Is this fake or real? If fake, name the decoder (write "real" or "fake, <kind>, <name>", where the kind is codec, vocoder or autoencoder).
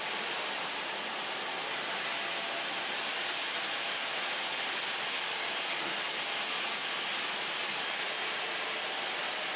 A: real